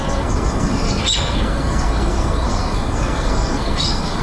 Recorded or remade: remade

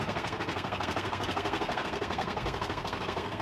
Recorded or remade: remade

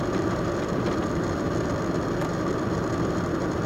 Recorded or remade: recorded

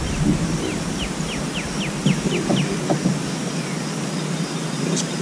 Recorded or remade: recorded